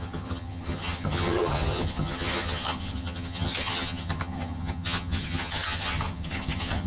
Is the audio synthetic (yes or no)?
yes